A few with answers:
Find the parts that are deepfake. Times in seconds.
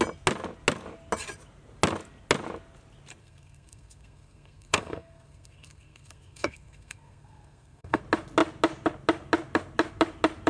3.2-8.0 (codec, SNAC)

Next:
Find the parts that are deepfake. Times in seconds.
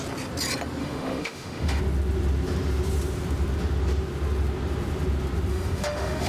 0.8-1.8 (autoencoder, DAC-VAE); 5.5-6.3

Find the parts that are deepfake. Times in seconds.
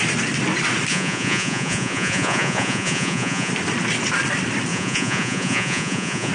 0.9-3.5 (vocoder, Vocos); 4.7-6.3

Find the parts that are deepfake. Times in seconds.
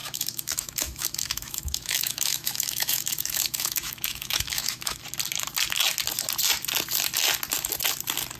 0.0-5.0 (autoencoder, DAC-VAE)